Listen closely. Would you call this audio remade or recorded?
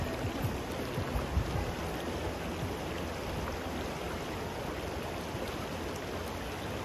recorded